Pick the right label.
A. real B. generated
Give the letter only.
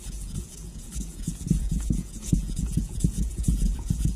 B